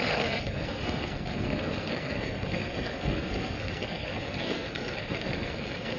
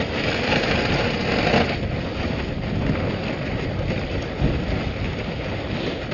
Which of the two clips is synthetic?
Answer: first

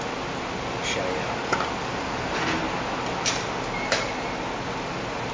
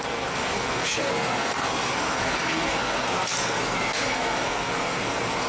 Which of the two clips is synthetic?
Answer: second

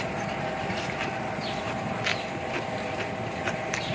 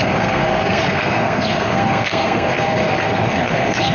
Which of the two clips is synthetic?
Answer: second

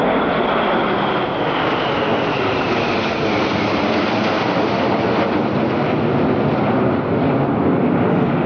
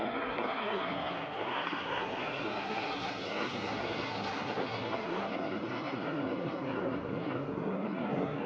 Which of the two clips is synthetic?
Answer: second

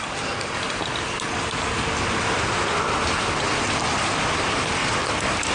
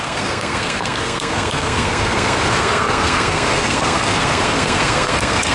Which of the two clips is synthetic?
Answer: second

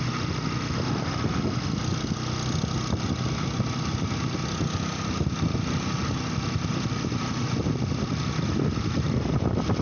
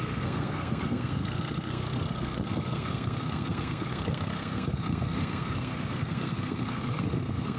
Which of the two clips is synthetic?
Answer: second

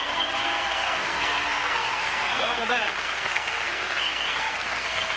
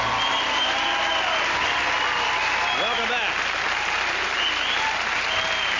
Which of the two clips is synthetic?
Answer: first